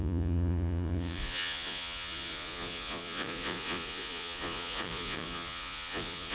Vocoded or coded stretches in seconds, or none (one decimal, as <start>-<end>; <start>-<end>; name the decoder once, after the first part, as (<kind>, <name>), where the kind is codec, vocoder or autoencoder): 0.0-6.3 (vocoder, Vocos)